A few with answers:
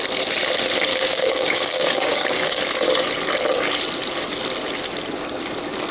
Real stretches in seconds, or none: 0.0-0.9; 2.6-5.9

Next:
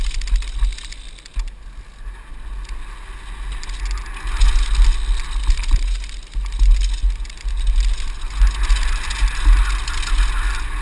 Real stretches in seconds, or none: 0.0-10.8

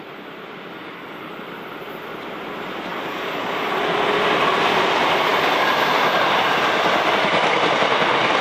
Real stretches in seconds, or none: 0.0-0.8; 1.3-2.9; 3.7-8.4

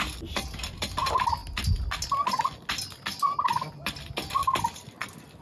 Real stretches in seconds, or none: 0.0-5.4

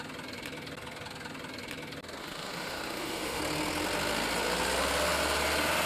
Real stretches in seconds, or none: 0.0-2.2; 3.4-5.9

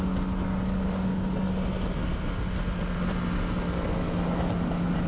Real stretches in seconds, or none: 0.0-5.1